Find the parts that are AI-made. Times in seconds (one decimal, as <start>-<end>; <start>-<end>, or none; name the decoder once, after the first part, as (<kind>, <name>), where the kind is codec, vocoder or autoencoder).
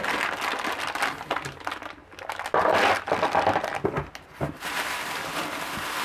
none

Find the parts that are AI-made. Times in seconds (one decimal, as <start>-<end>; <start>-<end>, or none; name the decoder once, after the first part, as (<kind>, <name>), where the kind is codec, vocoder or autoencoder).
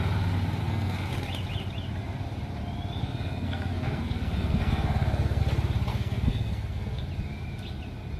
0.6-1.1 (codec, SNAC); 3.0-5.4; 5.9-7.0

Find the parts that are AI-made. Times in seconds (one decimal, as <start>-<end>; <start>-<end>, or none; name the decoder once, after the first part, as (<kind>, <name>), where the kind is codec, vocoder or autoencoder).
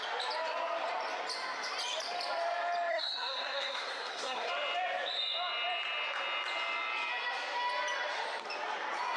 2.9-4.5 (codec, SNAC)